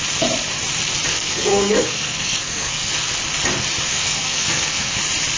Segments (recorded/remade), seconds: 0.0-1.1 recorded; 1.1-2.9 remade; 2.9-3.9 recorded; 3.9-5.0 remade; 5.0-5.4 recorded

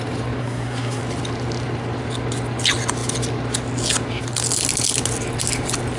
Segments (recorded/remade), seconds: 0.0-0.4 recorded; 0.4-1.0 remade; 1.0-6.0 recorded

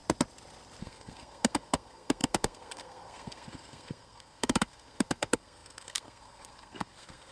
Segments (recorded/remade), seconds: 0.0-0.8 recorded; 0.8-7.3 remade